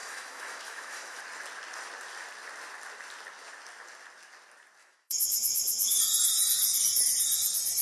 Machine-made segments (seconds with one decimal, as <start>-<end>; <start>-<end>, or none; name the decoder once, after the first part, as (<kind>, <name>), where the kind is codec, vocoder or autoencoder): 0.0-1.2 (autoencoder, DAC-VAE); 4.8-6.0